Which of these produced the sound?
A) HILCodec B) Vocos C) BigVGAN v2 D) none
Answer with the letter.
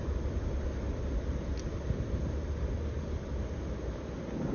D